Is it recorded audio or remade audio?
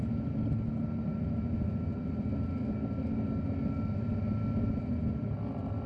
recorded